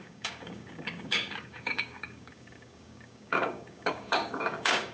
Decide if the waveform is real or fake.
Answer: fake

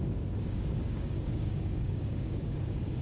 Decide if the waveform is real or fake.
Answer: fake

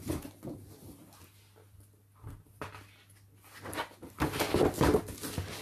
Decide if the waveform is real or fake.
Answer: real